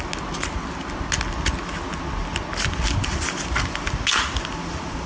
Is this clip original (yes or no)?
yes